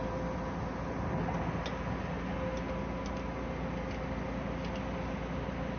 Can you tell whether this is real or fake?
real